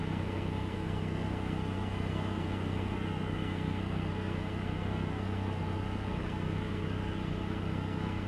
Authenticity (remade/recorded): remade